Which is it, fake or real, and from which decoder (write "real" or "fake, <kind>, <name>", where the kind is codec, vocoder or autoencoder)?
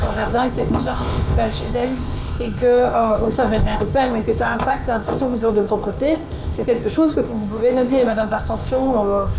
fake, codec, ZipCodec